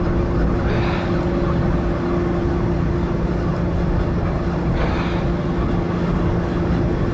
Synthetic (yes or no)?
no